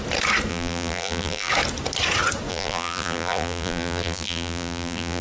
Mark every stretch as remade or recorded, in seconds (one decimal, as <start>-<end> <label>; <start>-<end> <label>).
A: 0.0-0.5 recorded; 0.5-1.5 remade; 1.5-2.5 recorded; 2.5-5.2 remade